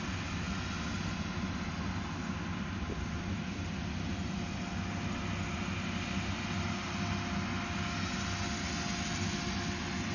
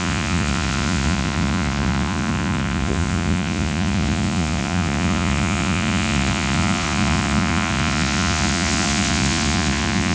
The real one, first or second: first